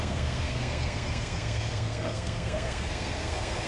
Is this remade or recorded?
remade